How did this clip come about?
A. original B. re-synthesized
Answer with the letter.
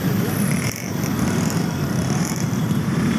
B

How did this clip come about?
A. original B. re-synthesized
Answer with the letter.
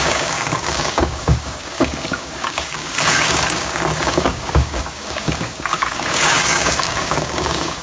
B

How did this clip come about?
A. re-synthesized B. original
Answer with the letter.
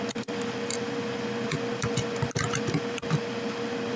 A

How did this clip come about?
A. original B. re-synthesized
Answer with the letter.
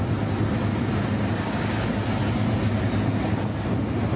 A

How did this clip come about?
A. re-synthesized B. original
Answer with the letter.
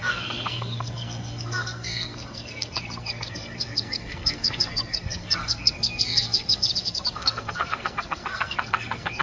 A